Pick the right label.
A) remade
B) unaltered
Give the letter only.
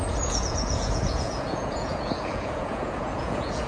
A